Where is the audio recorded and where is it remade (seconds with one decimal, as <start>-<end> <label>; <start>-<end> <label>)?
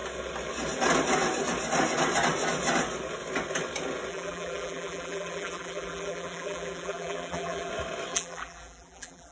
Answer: 0.0-4.1 recorded; 4.1-7.7 remade; 7.7-8.1 recorded; 8.1-9.3 remade